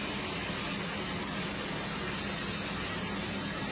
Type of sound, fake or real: real